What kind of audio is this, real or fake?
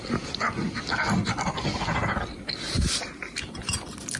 real